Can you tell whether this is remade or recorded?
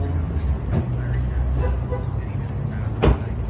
recorded